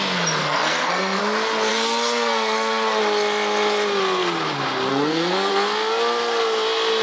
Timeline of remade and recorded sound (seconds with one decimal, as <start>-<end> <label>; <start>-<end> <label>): 0.0-0.4 recorded; 0.4-1.2 remade; 1.2-1.7 recorded; 1.7-3.0 remade; 3.0-4.9 recorded; 4.9-5.5 remade; 5.5-7.0 recorded